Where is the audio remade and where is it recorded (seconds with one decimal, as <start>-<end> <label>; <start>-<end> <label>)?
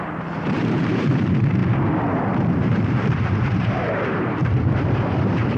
0.0-1.6 remade; 1.6-2.5 recorded; 2.5-5.6 remade